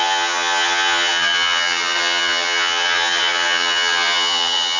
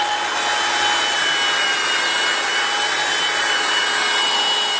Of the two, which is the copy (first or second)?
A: first